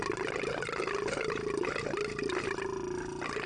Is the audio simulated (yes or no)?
no